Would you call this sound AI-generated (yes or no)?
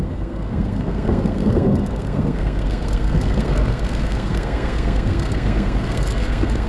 yes